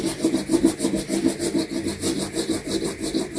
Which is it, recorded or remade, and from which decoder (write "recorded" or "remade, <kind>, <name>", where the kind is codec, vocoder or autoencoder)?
recorded